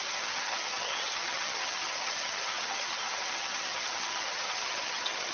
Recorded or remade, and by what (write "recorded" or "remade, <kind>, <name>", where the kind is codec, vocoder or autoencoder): remade, vocoder, HiFi-GAN